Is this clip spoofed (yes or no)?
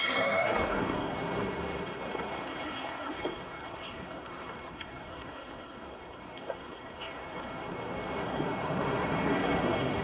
yes